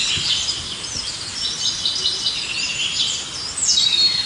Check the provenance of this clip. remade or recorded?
recorded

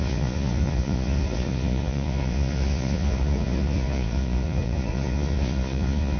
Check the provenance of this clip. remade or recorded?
remade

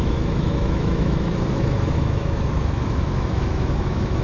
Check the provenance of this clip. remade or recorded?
remade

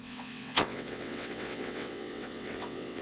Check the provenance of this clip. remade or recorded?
remade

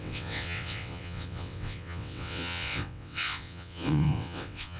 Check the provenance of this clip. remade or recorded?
remade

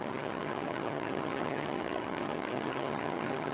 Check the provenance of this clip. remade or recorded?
remade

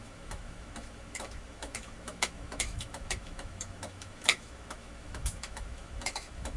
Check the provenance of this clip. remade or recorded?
remade